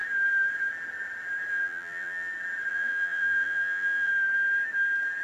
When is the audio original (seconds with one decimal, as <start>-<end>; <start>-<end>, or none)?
0.0-1.5; 2.3-2.7; 4.1-5.2